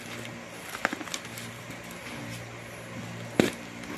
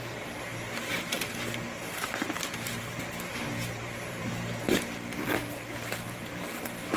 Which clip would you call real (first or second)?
first